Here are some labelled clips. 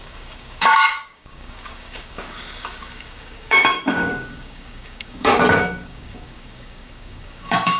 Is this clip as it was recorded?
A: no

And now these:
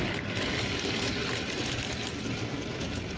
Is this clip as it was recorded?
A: yes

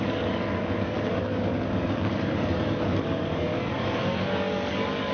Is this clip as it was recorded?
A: no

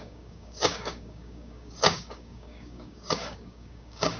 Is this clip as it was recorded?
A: no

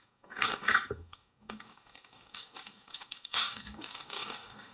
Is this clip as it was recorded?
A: no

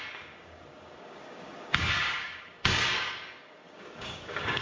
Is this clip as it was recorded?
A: no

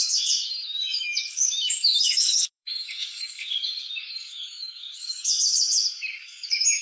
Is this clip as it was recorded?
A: no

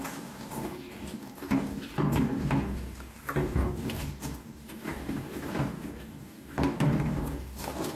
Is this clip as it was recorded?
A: no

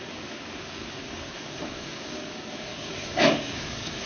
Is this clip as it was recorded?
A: no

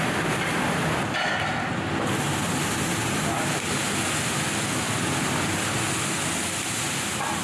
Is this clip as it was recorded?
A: yes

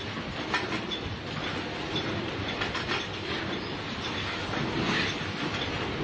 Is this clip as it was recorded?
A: yes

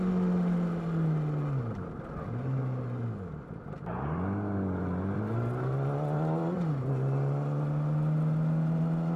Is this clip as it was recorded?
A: yes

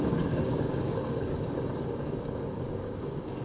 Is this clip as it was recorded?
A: no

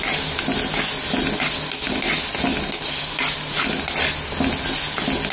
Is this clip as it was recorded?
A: yes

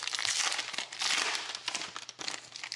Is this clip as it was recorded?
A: yes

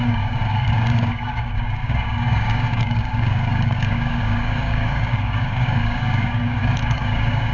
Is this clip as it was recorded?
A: no